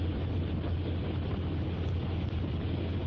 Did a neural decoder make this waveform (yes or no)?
no